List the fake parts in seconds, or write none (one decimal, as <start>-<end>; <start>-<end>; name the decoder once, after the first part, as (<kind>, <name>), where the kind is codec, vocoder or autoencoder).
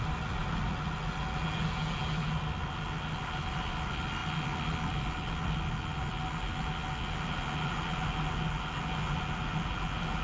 none